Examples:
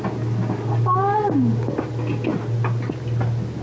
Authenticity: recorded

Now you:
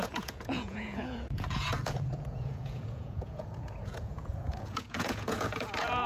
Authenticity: remade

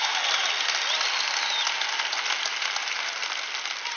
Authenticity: recorded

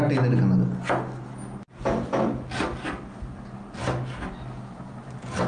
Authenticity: recorded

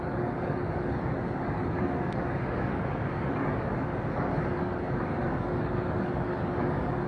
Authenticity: remade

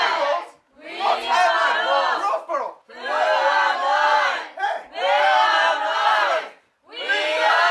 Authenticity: recorded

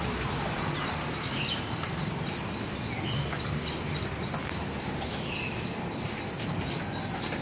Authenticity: recorded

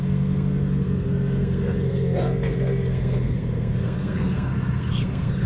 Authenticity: remade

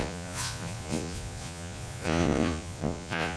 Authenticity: remade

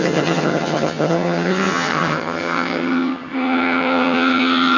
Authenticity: remade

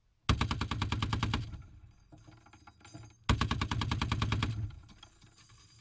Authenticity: recorded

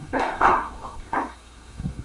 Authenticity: remade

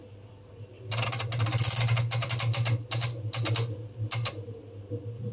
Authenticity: recorded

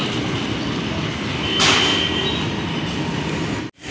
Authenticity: recorded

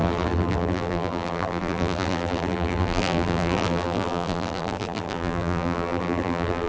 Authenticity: remade